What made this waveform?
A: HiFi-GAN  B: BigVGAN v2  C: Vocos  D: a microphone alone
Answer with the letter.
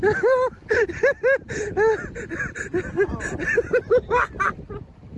D